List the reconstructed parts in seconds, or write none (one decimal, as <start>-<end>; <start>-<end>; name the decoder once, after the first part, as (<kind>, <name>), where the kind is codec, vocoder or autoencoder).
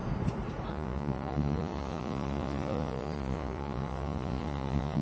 0.7-5.0 (vocoder, Vocos)